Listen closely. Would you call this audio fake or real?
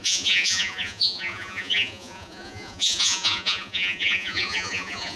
fake